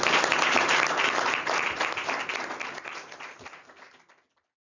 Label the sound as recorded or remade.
recorded